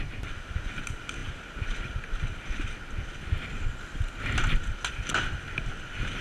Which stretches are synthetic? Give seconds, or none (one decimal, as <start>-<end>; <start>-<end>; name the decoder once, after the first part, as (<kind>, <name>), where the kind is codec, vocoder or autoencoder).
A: none